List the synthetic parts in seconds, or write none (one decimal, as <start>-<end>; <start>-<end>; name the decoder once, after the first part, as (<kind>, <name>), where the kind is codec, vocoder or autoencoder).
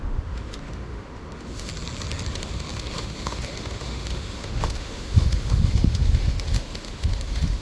0.0-1.7 (autoencoder, DAC-VAE); 2.3-7.6